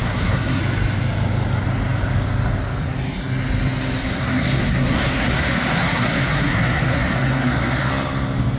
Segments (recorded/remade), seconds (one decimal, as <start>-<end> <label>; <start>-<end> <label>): 0.0-0.6 remade; 0.6-4.0 recorded; 4.0-7.9 remade; 7.9-8.6 recorded